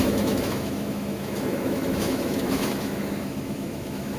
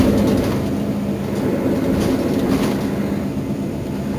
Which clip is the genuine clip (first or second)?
second